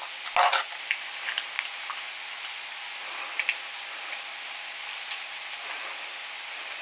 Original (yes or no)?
yes